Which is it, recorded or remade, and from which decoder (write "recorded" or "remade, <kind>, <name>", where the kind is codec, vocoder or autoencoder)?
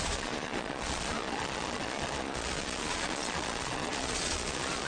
remade, vocoder, Vocos